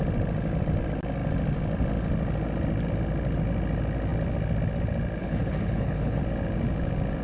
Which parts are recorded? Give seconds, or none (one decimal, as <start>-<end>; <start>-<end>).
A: 0.0-5.2; 6.2-7.2